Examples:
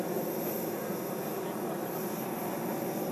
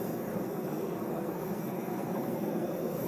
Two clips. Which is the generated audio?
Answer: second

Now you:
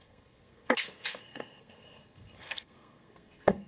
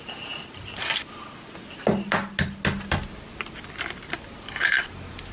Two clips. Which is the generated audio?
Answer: first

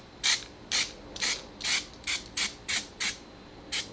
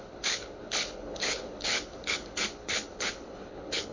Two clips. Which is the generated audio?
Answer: second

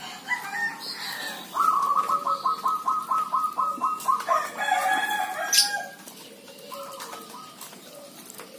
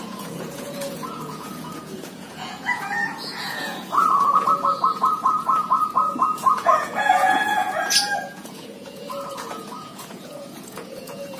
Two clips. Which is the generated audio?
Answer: second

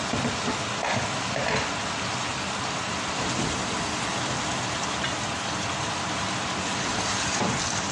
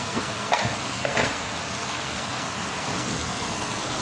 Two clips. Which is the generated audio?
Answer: second